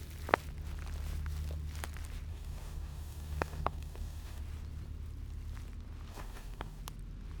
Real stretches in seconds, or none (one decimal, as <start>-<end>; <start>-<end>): 0.0-2.3; 4.4-6.1; 6.8-7.4

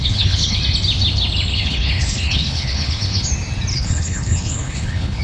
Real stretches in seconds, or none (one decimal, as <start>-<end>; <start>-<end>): 0.6-1.5; 3.3-3.7